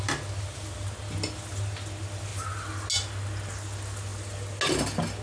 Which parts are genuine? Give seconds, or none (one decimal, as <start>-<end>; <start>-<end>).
0.0-5.2